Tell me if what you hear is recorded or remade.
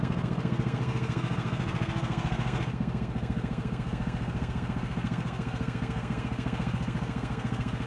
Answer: remade